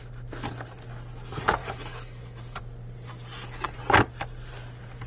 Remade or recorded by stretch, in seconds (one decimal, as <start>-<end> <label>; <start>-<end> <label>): 0.0-1.6 recorded; 1.6-2.6 remade; 2.6-5.1 recorded